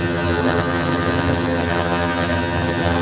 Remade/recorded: remade